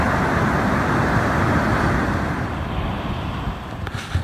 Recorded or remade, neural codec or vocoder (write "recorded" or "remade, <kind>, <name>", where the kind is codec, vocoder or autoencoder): recorded